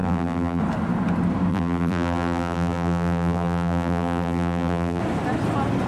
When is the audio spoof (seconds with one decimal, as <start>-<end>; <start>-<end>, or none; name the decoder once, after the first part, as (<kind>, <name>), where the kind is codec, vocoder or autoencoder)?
0.0-0.6 (vocoder, BigVGAN v2); 1.5-5.0